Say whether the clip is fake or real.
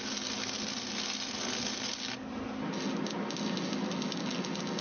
real